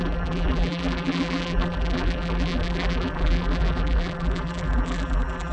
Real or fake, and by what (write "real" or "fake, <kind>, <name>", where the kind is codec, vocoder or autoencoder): fake, vocoder, BigVGAN v2